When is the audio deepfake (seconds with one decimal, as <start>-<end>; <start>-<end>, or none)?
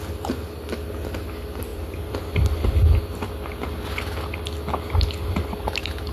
1.7-2.3